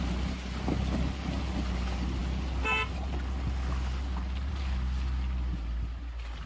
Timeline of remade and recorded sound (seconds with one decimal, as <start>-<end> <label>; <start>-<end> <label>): 0.0-6.5 recorded